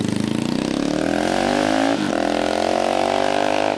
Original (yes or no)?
yes